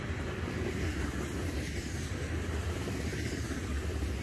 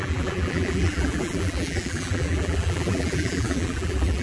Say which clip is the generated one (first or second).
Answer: second